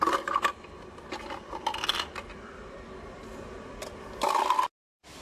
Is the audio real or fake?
real